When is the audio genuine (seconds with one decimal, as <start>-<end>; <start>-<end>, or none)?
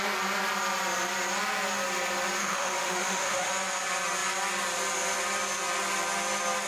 0.0-2.4; 3.5-6.7